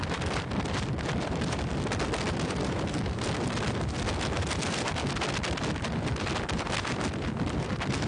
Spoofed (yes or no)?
no